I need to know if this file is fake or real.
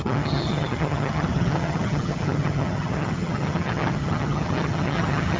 fake